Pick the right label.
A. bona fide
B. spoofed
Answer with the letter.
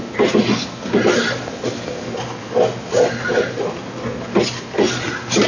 A